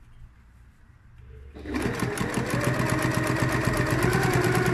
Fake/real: real